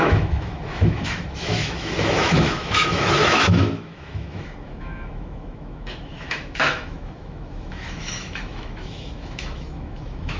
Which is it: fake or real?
fake